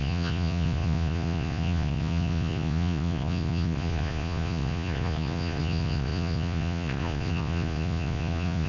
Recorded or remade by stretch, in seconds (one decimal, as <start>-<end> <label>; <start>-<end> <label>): 0.0-8.7 remade